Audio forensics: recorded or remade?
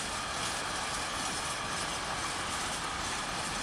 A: recorded